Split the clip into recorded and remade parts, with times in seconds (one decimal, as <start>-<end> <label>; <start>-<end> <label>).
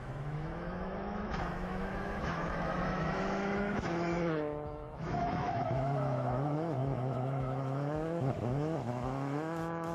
0.0-9.9 remade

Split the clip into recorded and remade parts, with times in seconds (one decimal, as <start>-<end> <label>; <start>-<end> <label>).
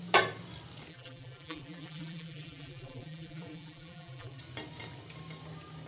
0.0-0.9 recorded; 0.9-4.4 remade; 4.4-5.9 recorded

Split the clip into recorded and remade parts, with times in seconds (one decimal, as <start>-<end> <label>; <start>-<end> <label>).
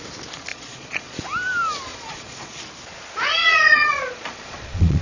0.0-0.5 recorded; 0.5-1.2 remade; 1.2-1.9 recorded; 1.9-2.6 remade; 2.6-3.4 recorded; 3.4-5.0 remade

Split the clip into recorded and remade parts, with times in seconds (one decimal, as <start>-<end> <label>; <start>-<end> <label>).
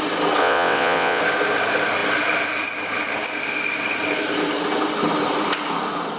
0.0-0.4 recorded; 0.4-1.2 remade; 1.2-6.2 recorded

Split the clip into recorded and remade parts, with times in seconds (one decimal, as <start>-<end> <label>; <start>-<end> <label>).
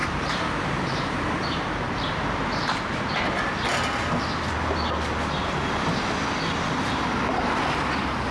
0.0-3.1 remade; 3.1-8.3 recorded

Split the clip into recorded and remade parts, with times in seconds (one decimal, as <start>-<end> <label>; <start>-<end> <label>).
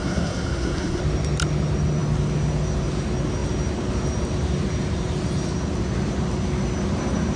0.0-1.0 remade; 1.0-7.4 recorded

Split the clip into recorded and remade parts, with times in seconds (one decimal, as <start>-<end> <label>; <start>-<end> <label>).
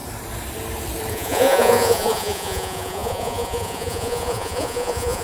0.0-1.1 recorded; 1.1-5.2 remade